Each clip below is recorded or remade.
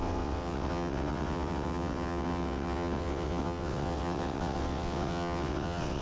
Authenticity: remade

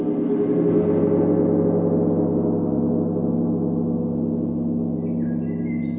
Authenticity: recorded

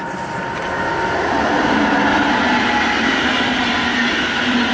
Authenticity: recorded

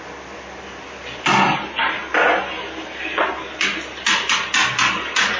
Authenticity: recorded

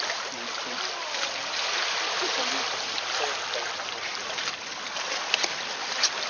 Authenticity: recorded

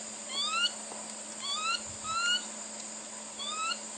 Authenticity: recorded